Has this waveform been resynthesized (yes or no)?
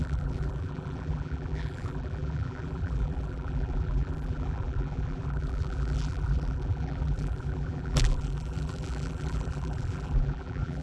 yes